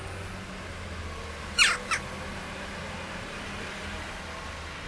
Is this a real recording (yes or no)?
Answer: yes